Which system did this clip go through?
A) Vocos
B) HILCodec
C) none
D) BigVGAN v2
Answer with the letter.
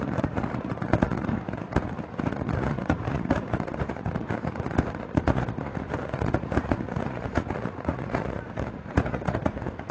A